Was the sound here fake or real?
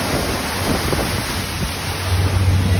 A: real